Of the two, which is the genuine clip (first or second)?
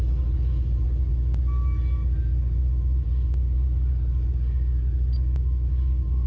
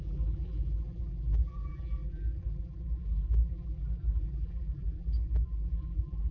first